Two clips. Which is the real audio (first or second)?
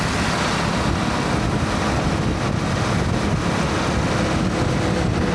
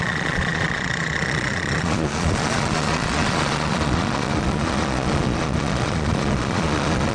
first